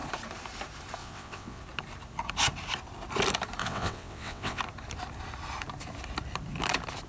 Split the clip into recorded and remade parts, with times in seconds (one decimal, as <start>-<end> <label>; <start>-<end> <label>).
0.0-1.0 recorded; 1.0-1.6 remade; 1.6-3.6 recorded; 3.6-4.6 remade; 4.6-7.1 recorded